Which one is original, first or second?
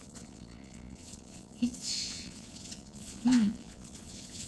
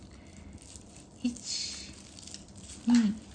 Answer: second